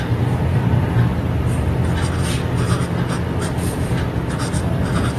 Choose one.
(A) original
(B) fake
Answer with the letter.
A